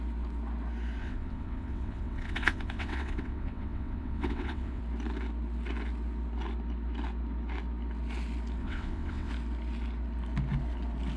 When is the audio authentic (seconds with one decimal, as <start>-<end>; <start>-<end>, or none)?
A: 0.0-1.0; 4.8-8.6; 9.3-11.2